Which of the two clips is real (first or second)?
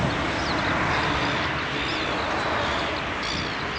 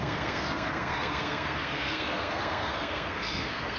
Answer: first